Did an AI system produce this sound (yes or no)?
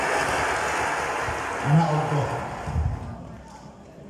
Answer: no